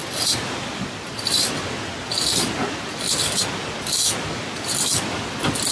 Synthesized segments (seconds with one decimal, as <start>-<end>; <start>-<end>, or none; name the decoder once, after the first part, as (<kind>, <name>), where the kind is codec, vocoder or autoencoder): 0.0-1.4 (vocoder, BigVGAN v2)